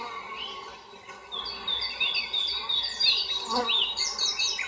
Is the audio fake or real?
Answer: real